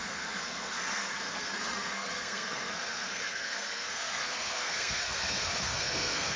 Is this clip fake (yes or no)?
yes